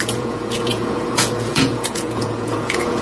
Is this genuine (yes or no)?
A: no